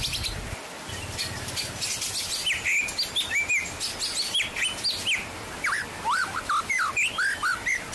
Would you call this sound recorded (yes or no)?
yes